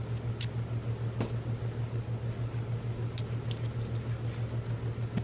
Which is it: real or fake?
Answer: real